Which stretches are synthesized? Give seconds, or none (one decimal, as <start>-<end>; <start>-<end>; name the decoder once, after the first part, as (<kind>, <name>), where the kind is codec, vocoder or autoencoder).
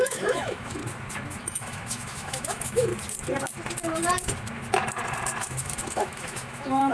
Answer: 0.0-0.8 (autoencoder, DAC-VAE); 1.4-2.9; 5.4-6.9